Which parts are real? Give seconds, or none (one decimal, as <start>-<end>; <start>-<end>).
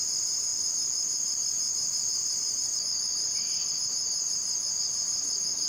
none